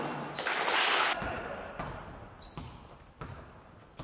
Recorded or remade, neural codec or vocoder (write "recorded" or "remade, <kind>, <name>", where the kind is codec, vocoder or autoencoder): recorded